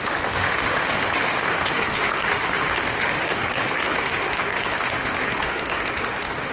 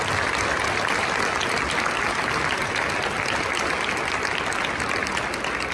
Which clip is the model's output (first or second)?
first